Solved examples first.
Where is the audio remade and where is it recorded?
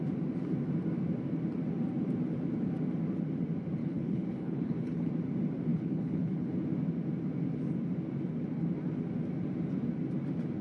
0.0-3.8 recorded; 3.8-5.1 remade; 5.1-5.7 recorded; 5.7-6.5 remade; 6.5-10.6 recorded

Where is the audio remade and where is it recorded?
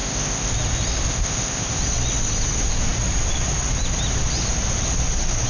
0.0-0.5 remade; 0.5-1.1 recorded; 1.1-1.8 remade; 1.8-5.5 recorded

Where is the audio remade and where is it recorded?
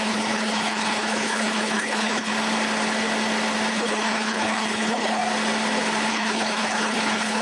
0.0-2.3 remade; 2.3-3.7 recorded; 3.7-5.2 remade; 5.2-6.1 recorded; 6.1-7.4 remade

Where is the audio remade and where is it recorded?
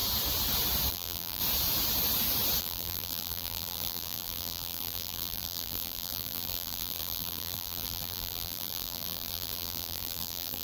0.0-0.9 recorded; 0.9-1.4 remade; 1.4-2.6 recorded; 2.6-10.6 remade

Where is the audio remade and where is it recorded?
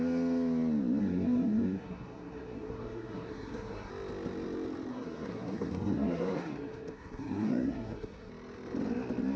0.0-1.0 recorded; 1.0-3.9 remade; 3.9-4.9 recorded; 4.9-8.3 remade; 8.3-9.4 recorded